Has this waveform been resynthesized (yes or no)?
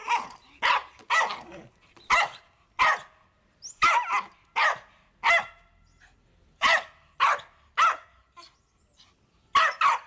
no